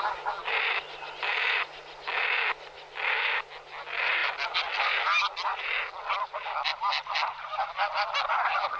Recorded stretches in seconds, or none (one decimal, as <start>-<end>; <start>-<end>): 0.0-8.8